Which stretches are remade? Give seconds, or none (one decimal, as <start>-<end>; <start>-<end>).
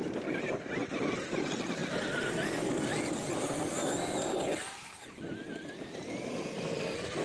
none